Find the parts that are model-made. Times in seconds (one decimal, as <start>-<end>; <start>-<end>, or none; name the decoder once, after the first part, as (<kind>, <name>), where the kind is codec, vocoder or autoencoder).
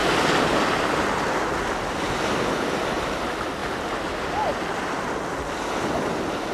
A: none